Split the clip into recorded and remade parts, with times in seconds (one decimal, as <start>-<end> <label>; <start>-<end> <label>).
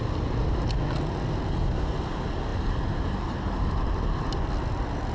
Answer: 0.0-5.1 recorded